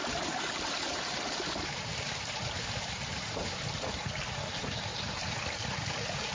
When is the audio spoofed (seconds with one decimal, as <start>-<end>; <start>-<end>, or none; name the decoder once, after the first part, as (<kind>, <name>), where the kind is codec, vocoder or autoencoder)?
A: 1.9-4.5 (vocoder, BigVGAN v2); 4.9-5.4